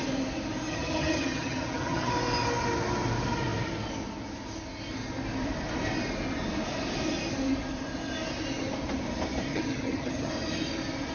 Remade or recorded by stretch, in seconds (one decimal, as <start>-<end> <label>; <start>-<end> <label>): 0.0-0.7 recorded; 0.7-2.1 remade; 2.1-9.5 recorded; 9.5-10.3 remade; 10.3-11.1 recorded